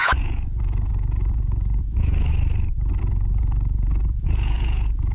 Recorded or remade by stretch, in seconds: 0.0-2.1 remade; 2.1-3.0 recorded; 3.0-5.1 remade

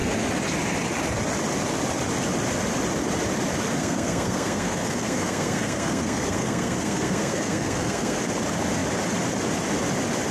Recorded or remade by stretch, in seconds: 0.0-3.8 recorded; 3.8-8.2 remade; 8.2-10.3 recorded

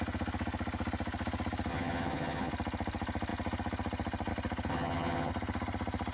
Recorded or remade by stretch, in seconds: 0.0-1.7 recorded; 1.7-2.5 remade; 2.5-4.7 recorded; 4.7-5.3 remade; 5.3-6.1 recorded

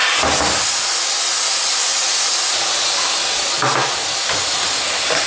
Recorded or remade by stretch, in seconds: 0.0-5.3 recorded

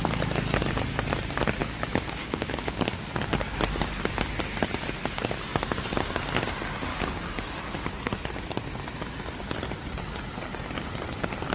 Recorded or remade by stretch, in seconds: 0.0-1.6 recorded; 1.6-2.5 remade; 2.5-6.9 recorded; 6.9-7.5 remade; 7.5-11.5 recorded